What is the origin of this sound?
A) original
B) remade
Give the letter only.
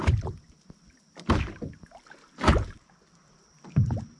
B